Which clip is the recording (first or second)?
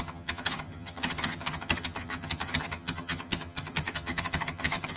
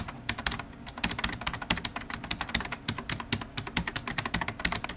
second